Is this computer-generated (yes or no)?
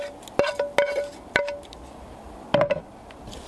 no